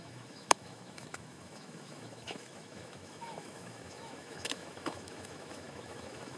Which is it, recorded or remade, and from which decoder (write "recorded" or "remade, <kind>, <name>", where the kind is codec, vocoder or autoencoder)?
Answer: remade, autoencoder, DAC-VAE